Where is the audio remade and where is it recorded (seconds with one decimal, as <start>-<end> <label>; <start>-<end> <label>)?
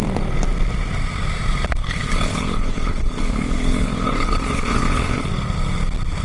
0.0-1.8 recorded; 1.8-5.3 remade; 5.3-6.2 recorded